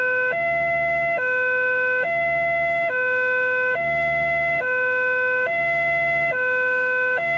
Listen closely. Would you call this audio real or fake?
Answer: fake